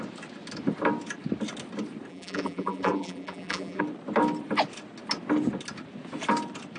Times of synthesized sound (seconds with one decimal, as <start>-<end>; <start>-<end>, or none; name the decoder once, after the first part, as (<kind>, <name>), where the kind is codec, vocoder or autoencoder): 2.1-3.8 (vocoder, BigVGAN v2)